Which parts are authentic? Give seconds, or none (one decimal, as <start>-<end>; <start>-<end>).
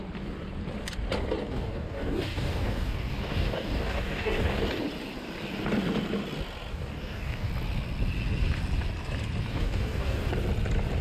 0.0-1.4; 4.6-6.7; 7.5-9.5; 10.3-11.0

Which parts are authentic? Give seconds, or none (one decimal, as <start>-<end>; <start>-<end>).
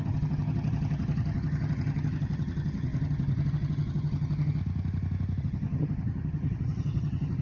4.6-5.4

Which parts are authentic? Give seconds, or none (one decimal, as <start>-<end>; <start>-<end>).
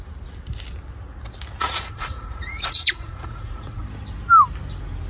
0.0-1.6; 3.8-5.1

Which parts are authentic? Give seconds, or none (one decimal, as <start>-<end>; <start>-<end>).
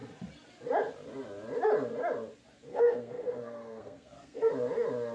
0.0-2.7; 4.5-5.1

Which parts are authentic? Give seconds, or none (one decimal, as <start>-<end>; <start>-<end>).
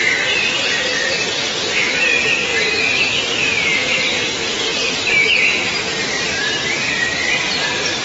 0.0-8.0